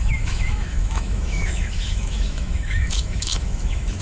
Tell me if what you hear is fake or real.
fake